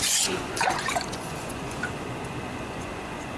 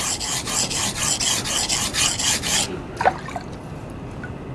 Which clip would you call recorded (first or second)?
second